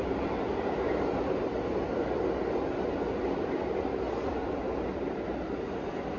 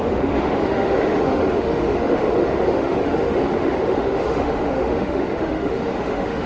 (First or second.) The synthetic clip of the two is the second